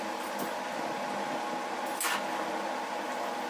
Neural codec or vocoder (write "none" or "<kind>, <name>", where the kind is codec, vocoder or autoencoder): none